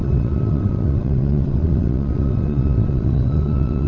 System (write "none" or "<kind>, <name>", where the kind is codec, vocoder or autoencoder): vocoder, WaveNeXt